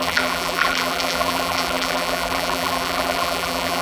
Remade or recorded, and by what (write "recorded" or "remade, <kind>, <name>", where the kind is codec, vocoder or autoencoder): remade, vocoder, BigVGAN v2